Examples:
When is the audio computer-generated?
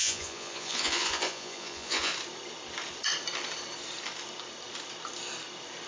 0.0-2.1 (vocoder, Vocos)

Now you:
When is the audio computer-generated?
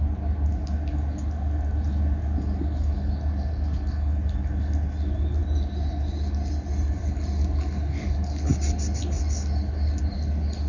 none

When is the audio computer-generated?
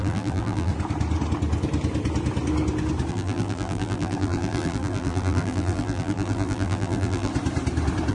0.0-0.7 (vocoder, BigVGAN v2); 3.1-7.3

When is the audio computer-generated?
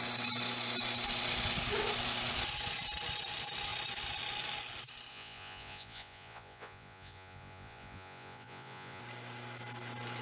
5.1-9.0 (vocoder, Vocos)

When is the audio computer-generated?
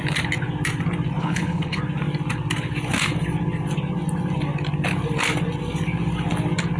1.2-1.8 (codec, HILCodec)